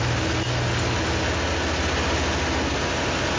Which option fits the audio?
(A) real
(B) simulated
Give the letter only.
A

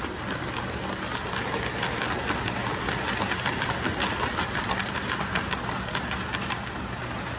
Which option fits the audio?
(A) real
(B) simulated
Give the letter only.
A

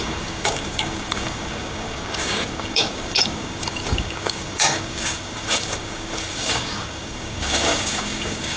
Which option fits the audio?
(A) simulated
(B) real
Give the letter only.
A